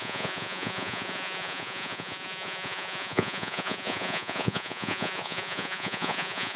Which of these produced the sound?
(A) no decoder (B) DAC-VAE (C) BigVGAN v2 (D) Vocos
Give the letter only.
D